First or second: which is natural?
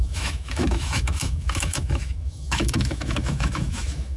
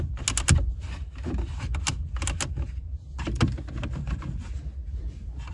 second